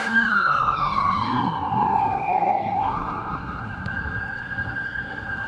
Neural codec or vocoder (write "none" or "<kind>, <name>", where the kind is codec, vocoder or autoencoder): codec, SNAC